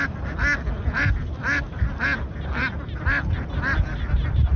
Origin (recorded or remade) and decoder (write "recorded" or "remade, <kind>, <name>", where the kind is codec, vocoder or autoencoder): recorded